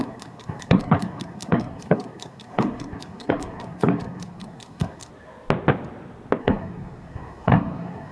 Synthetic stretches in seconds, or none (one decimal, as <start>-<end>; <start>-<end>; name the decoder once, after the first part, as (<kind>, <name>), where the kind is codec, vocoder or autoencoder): 0.0-5.1 (codec, SNAC); 6.4-8.1